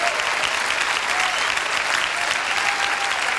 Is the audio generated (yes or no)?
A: no